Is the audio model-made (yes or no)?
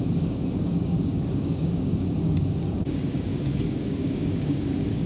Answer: yes